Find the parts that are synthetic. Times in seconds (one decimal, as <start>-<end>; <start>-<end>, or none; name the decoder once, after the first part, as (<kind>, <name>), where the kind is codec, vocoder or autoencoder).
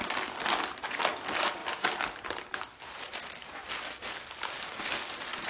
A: none